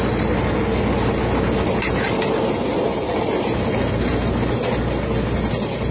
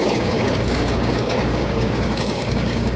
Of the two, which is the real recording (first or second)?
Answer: first